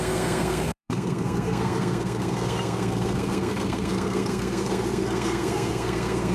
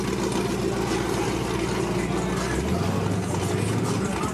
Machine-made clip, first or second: first